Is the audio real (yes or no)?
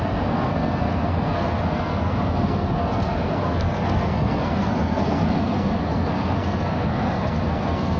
no